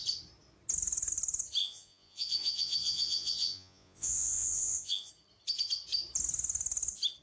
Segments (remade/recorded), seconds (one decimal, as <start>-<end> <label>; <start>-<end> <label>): 0.0-1.6 recorded; 1.6-5.1 remade; 5.1-7.2 recorded